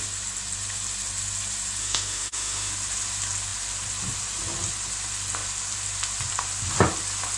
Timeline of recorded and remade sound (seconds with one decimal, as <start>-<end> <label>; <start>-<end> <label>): 0.0-1.8 recorded; 1.8-2.7 remade; 2.7-7.4 recorded